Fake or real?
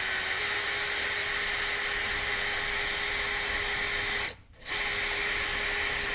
real